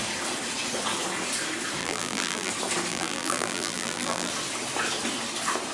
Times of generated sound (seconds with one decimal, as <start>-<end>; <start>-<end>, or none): 1.8-2.5; 2.9-4.3